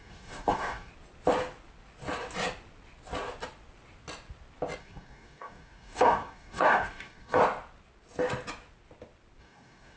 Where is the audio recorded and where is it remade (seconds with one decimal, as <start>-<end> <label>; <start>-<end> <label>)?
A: 0.0-0.9 remade; 0.9-4.8 recorded; 4.8-7.4 remade; 7.4-9.4 recorded; 9.4-10.0 remade